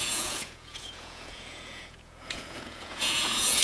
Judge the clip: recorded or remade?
remade